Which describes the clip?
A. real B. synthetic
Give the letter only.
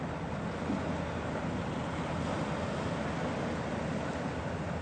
A